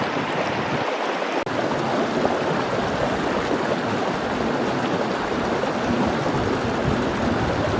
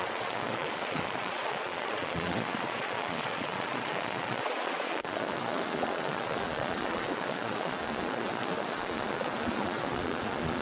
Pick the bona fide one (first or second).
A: first